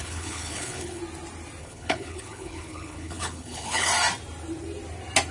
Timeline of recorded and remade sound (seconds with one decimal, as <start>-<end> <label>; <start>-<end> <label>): 0.0-1.0 remade; 1.0-1.6 recorded; 1.6-3.9 remade; 3.9-5.3 recorded